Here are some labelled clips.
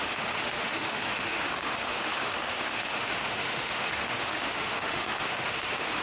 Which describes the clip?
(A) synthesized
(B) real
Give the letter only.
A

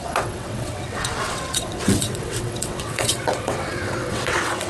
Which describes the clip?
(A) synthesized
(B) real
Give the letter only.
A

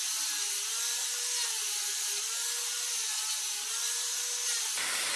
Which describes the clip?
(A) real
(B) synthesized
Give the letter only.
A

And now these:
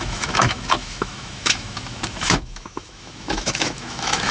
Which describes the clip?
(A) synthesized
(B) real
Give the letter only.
A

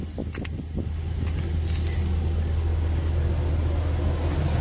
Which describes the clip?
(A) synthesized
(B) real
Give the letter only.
B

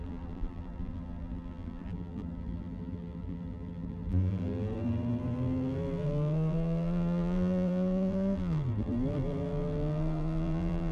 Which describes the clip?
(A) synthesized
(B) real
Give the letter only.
A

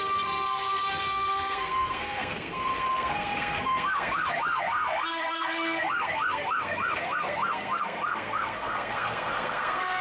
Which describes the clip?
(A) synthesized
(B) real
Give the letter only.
A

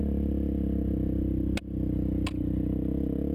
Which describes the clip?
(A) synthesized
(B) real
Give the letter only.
B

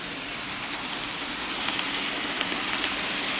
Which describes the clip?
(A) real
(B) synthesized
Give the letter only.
A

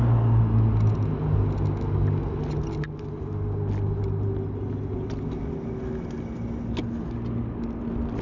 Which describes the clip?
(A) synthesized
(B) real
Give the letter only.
B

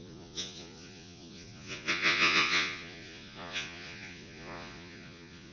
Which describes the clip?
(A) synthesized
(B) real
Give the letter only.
A